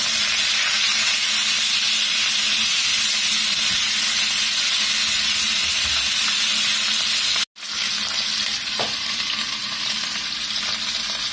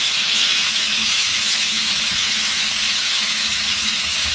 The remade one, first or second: second